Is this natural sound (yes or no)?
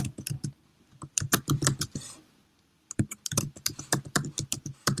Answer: no